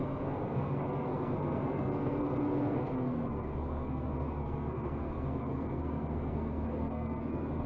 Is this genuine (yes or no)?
no